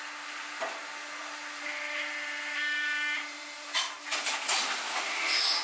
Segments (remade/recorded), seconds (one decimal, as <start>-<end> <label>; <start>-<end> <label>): 0.0-1.2 recorded; 1.2-4.6 remade; 4.6-5.6 recorded